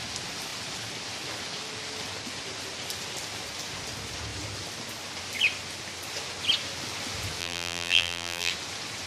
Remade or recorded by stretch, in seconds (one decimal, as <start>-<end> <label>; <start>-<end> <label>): 0.0-7.4 recorded; 7.4-8.5 remade; 8.5-9.1 recorded